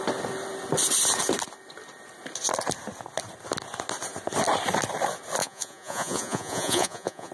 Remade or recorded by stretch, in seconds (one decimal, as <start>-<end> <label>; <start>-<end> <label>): 0.0-5.4 recorded; 5.4-7.3 remade